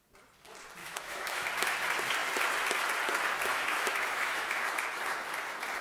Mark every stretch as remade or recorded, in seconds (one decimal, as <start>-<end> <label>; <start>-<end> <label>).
0.0-0.8 recorded; 0.8-1.5 remade; 1.5-3.5 recorded; 3.5-4.6 remade; 4.6-5.8 recorded